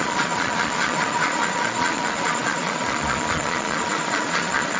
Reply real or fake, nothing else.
fake